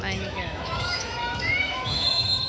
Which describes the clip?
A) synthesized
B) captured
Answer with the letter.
A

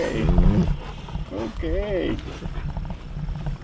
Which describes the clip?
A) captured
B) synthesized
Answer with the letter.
A